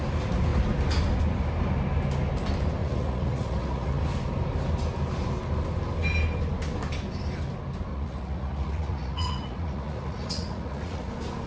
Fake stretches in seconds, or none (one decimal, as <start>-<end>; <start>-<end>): 2.8-4.0; 7.9-11.1